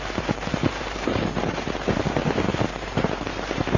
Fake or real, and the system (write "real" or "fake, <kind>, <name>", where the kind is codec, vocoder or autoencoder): fake, vocoder, BigVGAN v2